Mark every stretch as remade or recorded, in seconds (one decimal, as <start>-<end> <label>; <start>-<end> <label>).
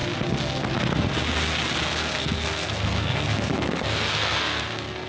0.0-1.9 recorded; 1.9-5.1 remade